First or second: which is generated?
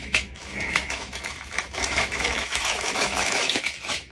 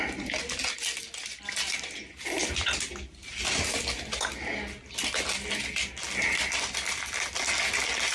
first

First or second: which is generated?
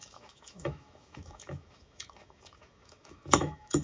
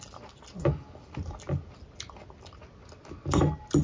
first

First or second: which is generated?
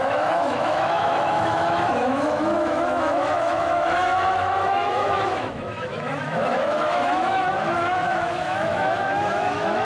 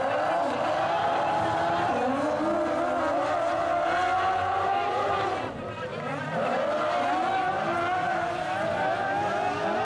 first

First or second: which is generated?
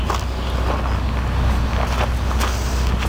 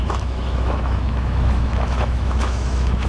second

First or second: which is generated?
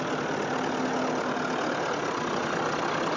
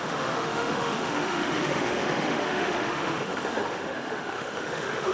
second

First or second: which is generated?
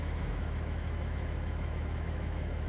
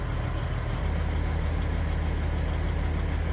first